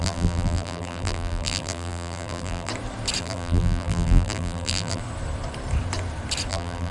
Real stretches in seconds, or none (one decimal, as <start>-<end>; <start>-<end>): 2.7-3.2; 5.0-6.5